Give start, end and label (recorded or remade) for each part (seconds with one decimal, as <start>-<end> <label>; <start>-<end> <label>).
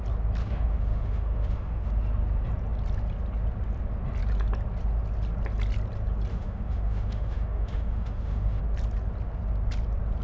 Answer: 0.0-0.4 recorded; 0.4-1.9 remade; 1.9-6.3 recorded; 6.3-8.6 remade; 8.6-10.2 recorded